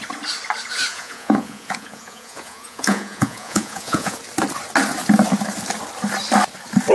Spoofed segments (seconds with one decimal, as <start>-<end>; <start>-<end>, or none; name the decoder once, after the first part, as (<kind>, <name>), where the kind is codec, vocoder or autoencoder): 0.9-4.2 (vocoder, Vocos)